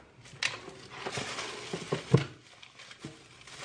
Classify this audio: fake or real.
real